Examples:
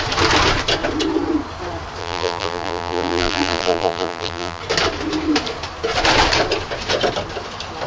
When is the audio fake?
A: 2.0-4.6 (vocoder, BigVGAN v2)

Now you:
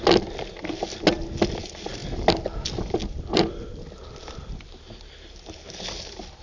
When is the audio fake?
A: none

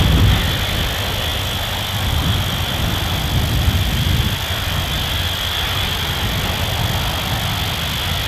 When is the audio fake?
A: 1.3-6.3 (vocoder, BigVGAN v2)

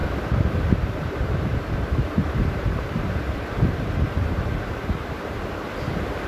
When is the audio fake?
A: 0.9-6.3 (vocoder, BigVGAN v2)

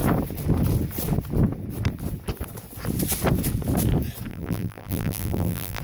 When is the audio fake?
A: 4.3-5.8 (vocoder, BigVGAN v2)

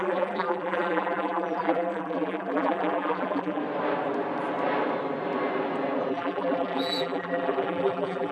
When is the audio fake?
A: 0.0-3.6 (vocoder, BigVGAN v2); 6.1-8.3

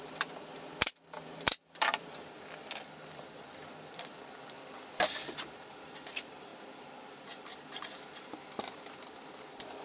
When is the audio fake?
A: 0.0-6.5 (vocoder, BigVGAN v2); 7.1-9.8

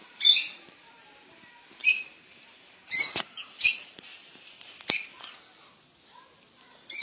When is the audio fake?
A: 0.0-1.0 (vocoder, BigVGAN v2); 1.8-4.6